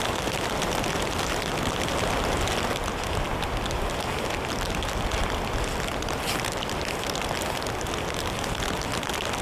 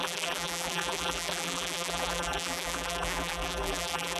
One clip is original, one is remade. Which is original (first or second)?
first